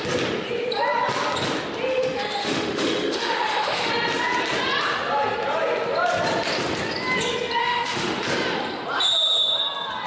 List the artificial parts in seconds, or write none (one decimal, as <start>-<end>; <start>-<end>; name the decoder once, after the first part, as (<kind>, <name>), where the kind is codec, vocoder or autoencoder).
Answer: 1.9-3.9 (autoencoder, DAC-VAE); 7.6-8.2